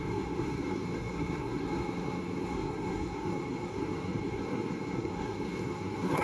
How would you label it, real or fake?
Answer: fake